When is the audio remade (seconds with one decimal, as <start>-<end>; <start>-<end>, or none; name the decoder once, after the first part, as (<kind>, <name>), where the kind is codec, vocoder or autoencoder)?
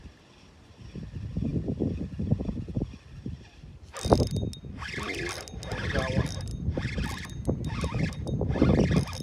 1.5-4.5 (vocoder, BigVGAN v2); 6.5-7.7